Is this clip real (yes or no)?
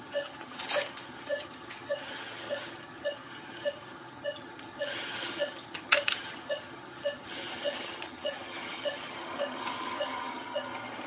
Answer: no